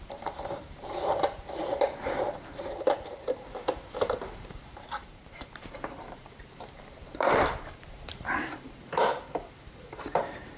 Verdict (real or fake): fake